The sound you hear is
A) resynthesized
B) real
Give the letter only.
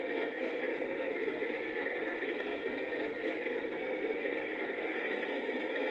A